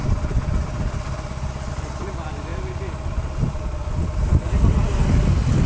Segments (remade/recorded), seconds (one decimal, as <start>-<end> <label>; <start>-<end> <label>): 0.0-5.7 recorded